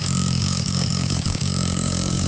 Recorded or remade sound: remade